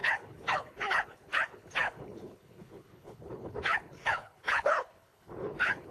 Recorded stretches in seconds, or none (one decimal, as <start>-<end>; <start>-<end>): none